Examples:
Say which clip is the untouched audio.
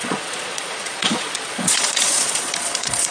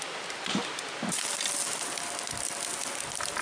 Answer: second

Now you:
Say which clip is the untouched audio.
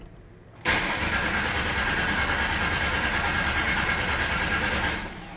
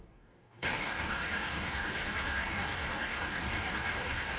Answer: first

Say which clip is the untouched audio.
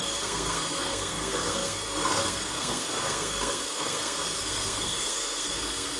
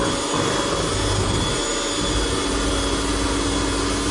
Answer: second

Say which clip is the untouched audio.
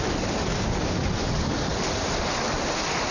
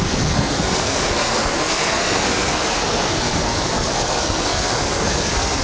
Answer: first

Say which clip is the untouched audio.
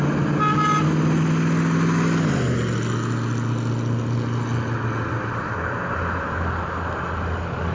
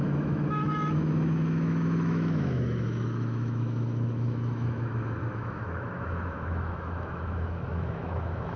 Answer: first